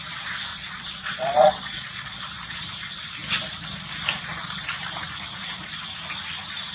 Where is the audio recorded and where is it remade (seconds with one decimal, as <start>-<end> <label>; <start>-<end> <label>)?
0.0-0.5 recorded; 0.5-2.2 remade; 2.2-6.7 recorded